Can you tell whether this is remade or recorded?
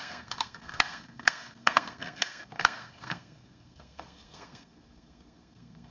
remade